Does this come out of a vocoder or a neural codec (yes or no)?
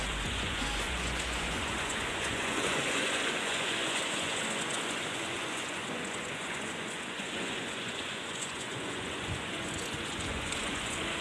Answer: yes